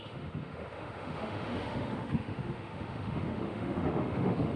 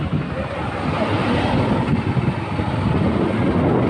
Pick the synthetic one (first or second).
first